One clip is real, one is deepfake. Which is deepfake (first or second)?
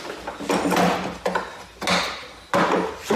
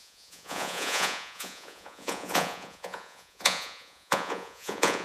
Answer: second